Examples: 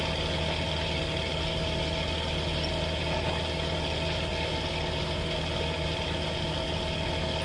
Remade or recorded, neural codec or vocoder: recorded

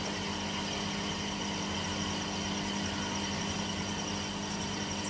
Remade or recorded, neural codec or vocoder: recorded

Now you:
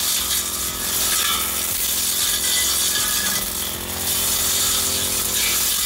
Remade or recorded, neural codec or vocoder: recorded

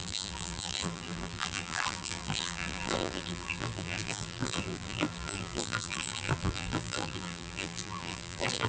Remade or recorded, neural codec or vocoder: remade, vocoder, BigVGAN v2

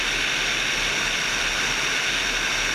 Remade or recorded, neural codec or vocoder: recorded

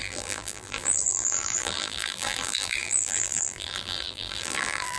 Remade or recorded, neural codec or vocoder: remade, vocoder, BigVGAN v2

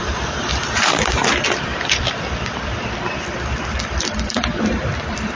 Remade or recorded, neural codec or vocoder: remade, vocoder, BigVGAN v2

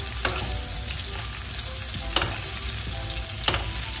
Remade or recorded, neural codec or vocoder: recorded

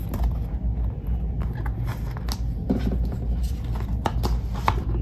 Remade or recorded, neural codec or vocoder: recorded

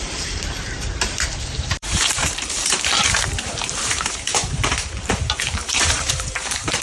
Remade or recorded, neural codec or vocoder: remade, vocoder, BigVGAN v2